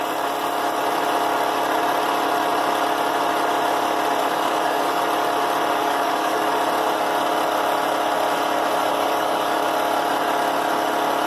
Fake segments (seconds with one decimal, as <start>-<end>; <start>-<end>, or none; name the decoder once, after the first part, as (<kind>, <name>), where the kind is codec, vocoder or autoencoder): 4.2-5.0 (codec, DAC); 5.8-6.5; 8.8-9.7